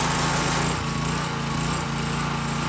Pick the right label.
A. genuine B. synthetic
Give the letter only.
A